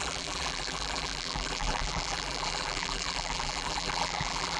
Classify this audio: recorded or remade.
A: remade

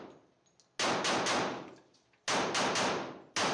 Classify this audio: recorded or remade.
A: recorded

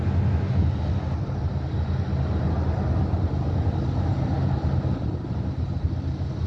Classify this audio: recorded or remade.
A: recorded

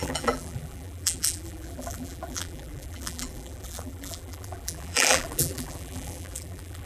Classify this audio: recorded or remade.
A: remade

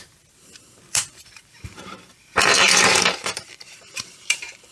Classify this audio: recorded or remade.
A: remade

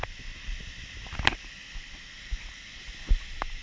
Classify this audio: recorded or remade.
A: recorded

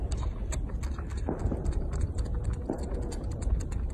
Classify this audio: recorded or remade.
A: recorded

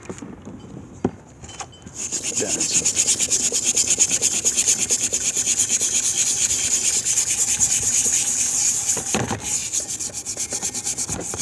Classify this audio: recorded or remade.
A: recorded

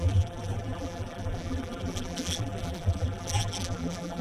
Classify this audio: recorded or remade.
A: remade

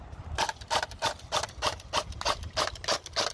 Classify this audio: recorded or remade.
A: recorded